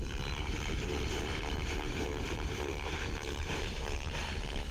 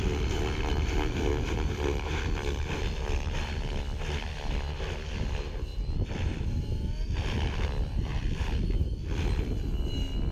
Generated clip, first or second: first